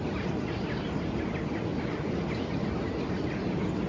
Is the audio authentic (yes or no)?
yes